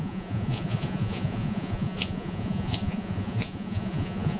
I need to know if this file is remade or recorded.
remade